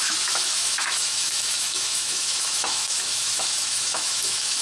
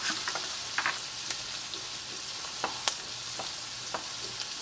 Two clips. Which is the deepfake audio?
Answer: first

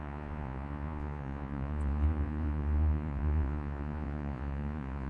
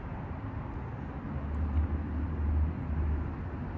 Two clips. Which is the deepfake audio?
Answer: first